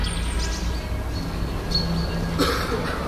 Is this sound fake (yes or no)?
no